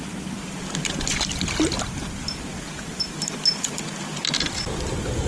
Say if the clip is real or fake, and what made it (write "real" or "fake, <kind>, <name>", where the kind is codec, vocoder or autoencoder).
real